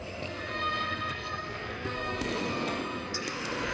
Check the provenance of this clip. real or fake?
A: fake